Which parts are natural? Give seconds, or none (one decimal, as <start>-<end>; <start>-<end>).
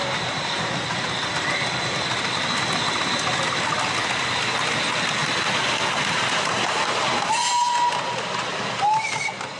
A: 0.0-9.6